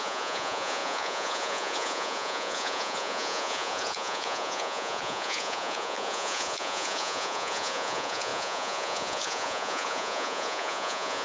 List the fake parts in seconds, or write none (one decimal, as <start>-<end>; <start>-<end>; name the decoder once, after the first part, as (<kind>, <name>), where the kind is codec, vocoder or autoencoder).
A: 0.0-11.2 (vocoder, Vocos)